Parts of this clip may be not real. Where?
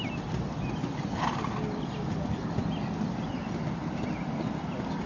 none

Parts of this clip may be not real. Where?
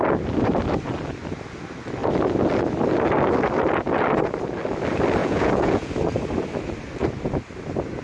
5.2-5.9 (vocoder, Vocos)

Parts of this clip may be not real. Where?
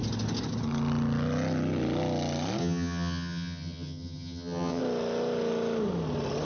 2.6-4.8 (vocoder, HiFi-GAN)